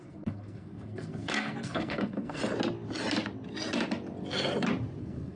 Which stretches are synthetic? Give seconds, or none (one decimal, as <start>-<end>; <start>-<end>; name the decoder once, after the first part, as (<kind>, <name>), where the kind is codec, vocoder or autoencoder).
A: 0.0-2.4 (codec, SNAC); 5.0-5.4